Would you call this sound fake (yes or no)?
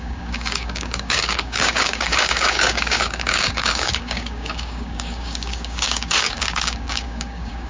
yes